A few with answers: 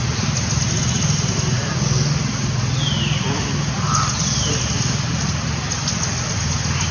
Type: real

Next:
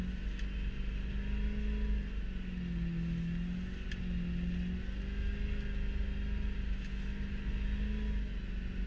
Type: real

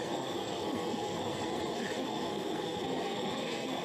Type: fake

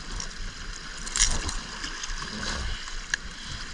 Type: real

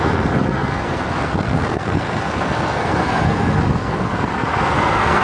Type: fake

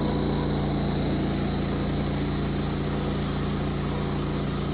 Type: real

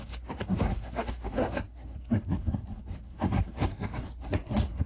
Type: fake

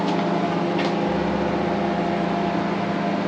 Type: real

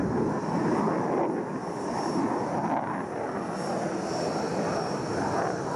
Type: real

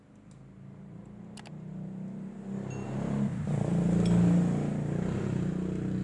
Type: real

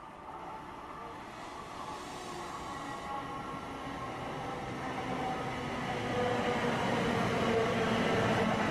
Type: real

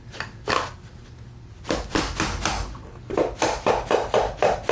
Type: real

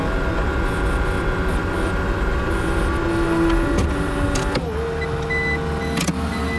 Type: real